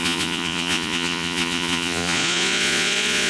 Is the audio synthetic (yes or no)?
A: yes